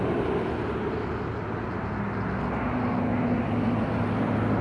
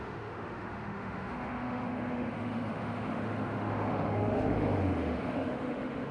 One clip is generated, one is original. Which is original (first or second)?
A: first